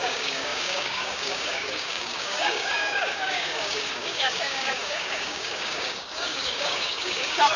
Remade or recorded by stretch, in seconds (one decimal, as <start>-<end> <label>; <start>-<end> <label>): 0.0-7.6 remade